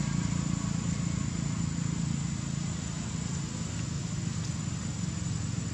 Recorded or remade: recorded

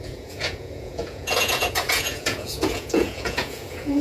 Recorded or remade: remade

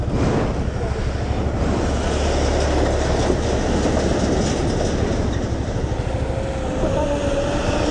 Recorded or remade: recorded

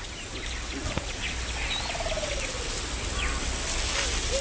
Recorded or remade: recorded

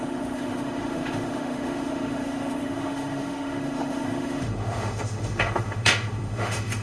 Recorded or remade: remade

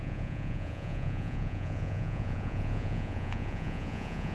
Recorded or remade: remade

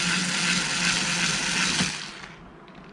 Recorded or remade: recorded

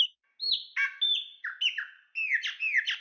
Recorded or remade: recorded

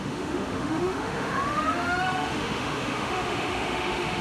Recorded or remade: remade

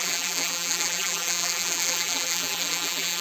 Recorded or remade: remade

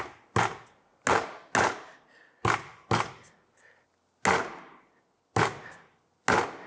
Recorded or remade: recorded